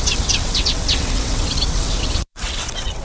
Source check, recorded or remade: remade